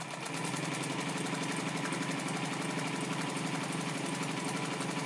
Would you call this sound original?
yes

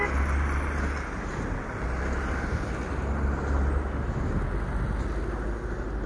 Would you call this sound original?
yes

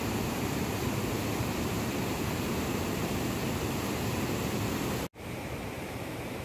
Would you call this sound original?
no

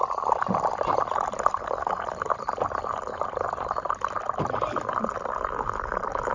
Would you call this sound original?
yes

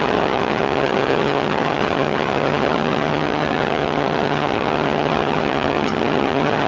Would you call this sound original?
no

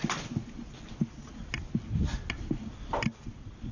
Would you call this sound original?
yes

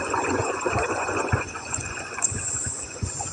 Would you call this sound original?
no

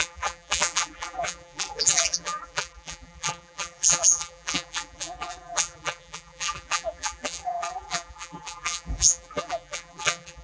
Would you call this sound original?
no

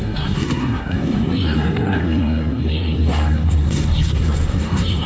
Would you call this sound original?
no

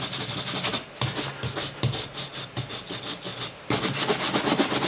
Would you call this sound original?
yes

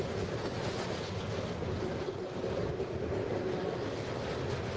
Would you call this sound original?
yes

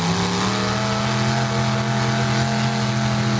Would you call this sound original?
yes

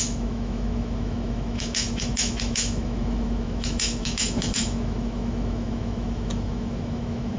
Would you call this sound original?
no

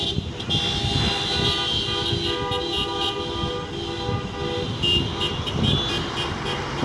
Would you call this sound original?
yes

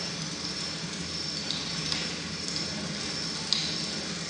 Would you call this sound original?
yes